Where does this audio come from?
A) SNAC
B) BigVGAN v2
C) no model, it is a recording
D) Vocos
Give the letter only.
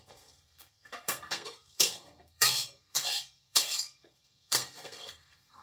A